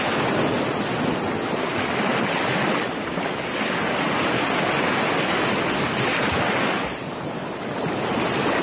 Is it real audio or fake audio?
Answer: real